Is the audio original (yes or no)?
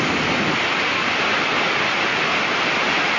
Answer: yes